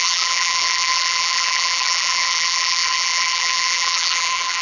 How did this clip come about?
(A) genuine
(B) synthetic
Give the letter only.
B